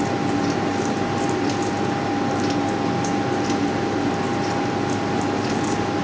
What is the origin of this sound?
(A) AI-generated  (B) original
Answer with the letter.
B